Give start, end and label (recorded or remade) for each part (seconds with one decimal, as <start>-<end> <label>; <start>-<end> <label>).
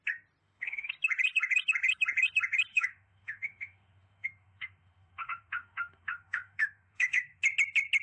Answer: 0.0-0.4 recorded; 0.4-0.9 remade; 0.9-2.7 recorded; 2.7-7.4 remade; 7.4-8.0 recorded